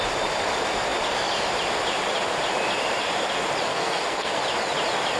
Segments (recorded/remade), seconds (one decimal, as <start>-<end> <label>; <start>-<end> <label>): 0.0-3.7 recorded; 3.7-4.4 remade; 4.4-5.2 recorded